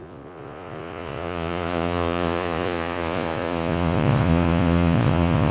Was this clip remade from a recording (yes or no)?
yes